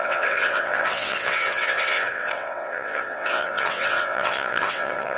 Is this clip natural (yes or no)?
no